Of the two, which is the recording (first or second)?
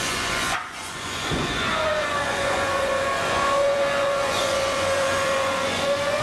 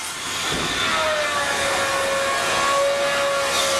second